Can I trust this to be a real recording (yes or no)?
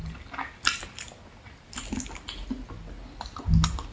yes